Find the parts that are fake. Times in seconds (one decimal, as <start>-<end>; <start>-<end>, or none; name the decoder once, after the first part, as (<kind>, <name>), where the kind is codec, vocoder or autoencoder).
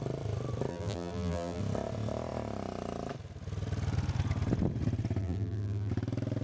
0.7-1.6 (vocoder, BigVGAN v2); 5.2-5.9